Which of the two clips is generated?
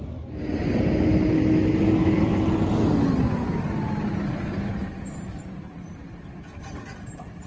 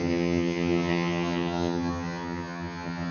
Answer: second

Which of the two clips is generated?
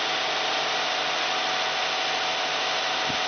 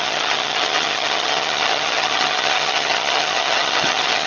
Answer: second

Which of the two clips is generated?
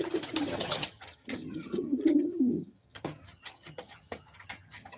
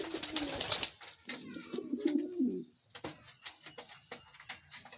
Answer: first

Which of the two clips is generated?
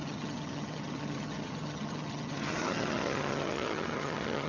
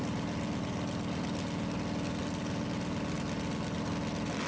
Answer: first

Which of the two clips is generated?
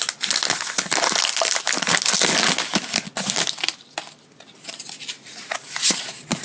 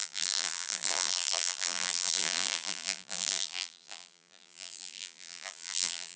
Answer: second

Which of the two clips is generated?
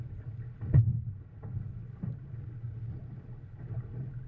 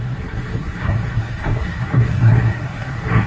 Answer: second